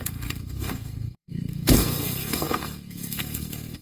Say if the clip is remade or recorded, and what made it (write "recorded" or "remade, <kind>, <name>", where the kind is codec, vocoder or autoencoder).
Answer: remade, codec, SNAC